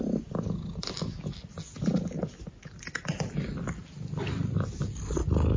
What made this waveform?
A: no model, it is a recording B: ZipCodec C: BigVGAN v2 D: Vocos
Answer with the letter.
A